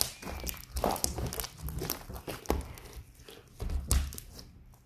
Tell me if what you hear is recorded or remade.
recorded